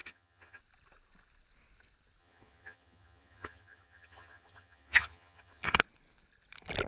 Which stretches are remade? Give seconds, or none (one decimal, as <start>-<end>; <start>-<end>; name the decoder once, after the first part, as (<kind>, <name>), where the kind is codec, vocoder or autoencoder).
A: 0.0-0.6 (vocoder, HiFi-GAN); 2.2-5.8